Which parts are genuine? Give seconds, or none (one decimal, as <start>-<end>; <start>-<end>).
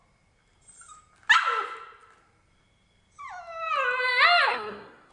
0.0-4.5